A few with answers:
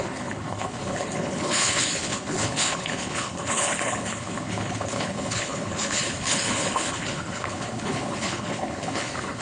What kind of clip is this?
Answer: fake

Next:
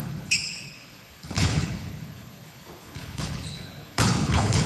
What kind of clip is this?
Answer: fake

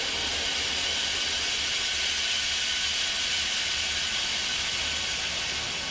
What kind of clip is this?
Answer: real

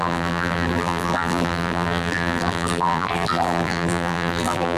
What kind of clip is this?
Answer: fake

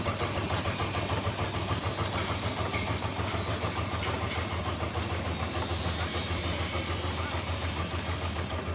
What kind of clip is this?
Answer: real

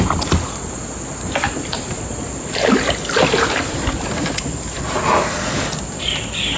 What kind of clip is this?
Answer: real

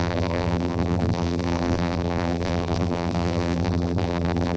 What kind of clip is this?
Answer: fake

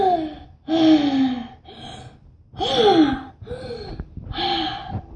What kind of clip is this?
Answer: real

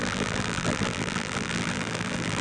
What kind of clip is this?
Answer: fake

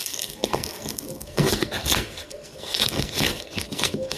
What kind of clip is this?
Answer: fake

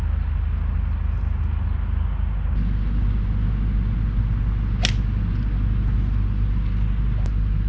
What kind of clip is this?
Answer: real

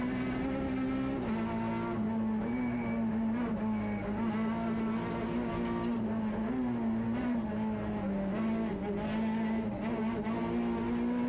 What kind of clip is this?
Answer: real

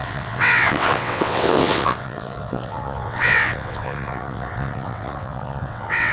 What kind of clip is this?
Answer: fake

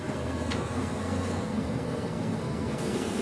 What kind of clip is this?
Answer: fake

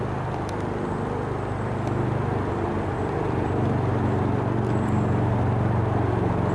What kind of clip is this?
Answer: real